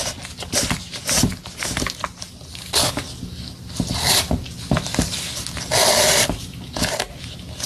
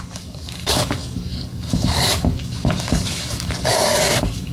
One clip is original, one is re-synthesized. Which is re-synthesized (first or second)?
second